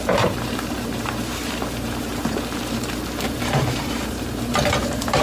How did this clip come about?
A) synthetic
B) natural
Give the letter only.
A